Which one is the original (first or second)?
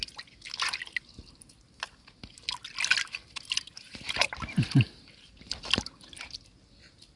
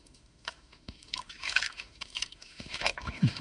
first